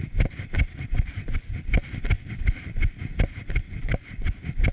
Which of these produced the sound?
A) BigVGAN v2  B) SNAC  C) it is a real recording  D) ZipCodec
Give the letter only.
C